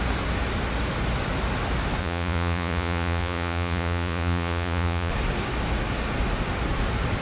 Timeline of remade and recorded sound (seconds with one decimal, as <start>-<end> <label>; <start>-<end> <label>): 0.0-2.0 recorded; 2.0-5.1 remade; 5.1-7.2 recorded